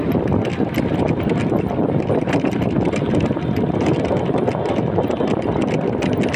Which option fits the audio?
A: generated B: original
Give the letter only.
B